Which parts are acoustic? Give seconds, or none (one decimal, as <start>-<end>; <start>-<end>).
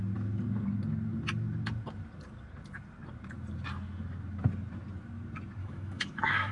0.0-5.6